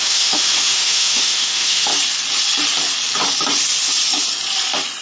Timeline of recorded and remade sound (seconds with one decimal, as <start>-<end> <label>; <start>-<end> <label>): 0.0-1.9 remade; 1.9-5.0 recorded